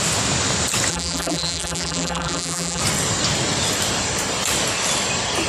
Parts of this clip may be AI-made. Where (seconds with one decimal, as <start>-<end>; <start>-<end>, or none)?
0.9-2.8